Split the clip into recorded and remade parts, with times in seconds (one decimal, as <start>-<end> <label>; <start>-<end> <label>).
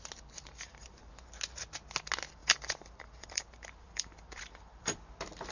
0.0-0.5 recorded; 0.5-1.1 remade; 1.1-2.4 recorded; 2.4-5.0 remade; 5.0-5.5 recorded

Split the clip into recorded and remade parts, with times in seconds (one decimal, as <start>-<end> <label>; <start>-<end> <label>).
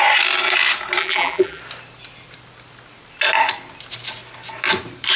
0.0-1.0 recorded; 1.0-1.6 remade; 1.6-5.2 recorded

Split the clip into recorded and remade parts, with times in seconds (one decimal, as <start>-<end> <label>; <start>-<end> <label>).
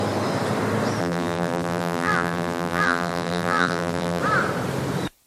0.0-1.0 recorded; 1.0-4.2 remade; 4.2-5.3 recorded